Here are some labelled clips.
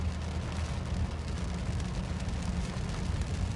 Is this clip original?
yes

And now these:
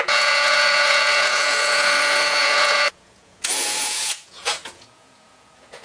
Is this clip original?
no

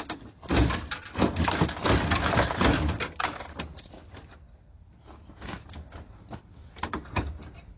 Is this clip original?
yes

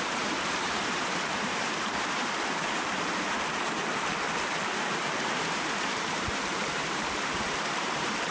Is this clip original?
no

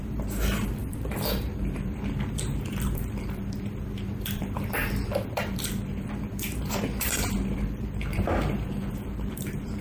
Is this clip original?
no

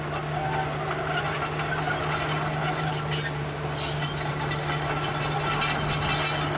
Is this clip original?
yes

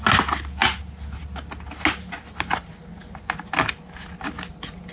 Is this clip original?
yes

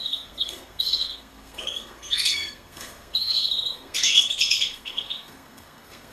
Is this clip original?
no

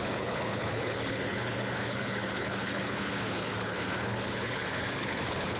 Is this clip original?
no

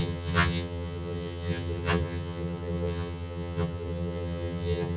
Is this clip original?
no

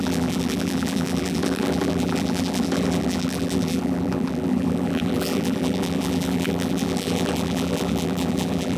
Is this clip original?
no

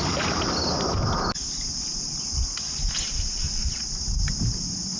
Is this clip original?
yes